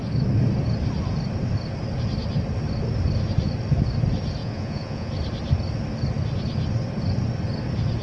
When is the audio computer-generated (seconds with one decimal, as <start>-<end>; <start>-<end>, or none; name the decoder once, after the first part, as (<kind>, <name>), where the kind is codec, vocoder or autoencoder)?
4.4-5.1 (vocoder, Vocos)